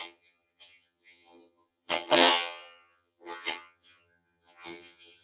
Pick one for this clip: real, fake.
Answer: fake